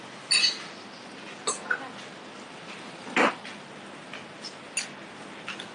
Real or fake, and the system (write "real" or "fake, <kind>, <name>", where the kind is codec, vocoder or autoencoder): real